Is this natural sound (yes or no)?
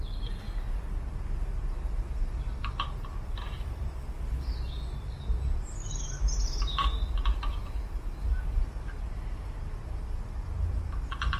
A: yes